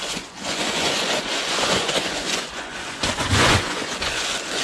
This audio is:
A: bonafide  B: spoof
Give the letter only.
B